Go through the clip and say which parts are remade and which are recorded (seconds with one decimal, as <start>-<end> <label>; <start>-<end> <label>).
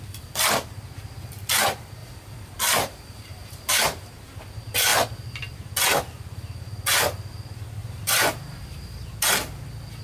0.0-2.0 recorded; 2.0-4.1 remade; 4.1-7.8 recorded; 7.8-9.1 remade; 9.1-10.0 recorded